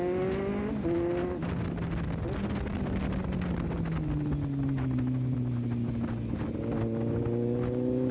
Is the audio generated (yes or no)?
no